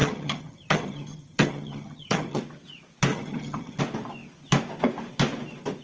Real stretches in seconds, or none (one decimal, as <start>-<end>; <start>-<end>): 2.4-3.1; 3.8-5.8